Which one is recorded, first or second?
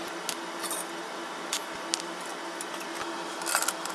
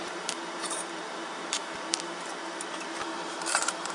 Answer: first